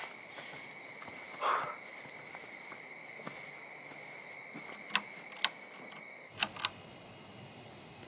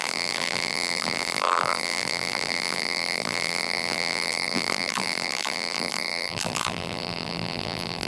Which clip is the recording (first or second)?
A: first